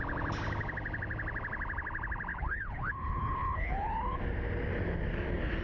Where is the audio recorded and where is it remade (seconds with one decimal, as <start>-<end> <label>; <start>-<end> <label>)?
0.0-2.3 recorded; 2.3-4.2 remade; 4.2-5.6 recorded